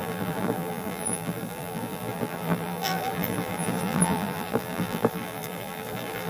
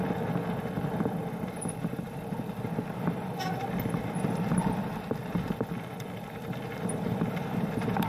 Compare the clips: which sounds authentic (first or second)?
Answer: second